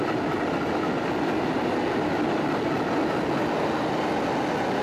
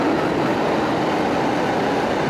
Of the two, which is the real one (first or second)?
first